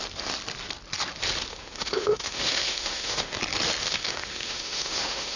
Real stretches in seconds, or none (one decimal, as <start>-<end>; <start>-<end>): 0.0-1.5; 3.4-3.8